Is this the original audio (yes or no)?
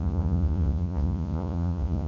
no